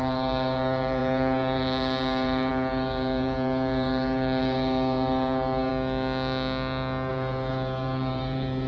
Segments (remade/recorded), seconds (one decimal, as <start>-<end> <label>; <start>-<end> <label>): 0.0-5.7 remade; 5.7-7.1 recorded; 7.1-8.7 remade